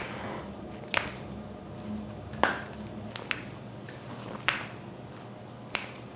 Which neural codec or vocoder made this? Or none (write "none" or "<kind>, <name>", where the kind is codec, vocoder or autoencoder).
none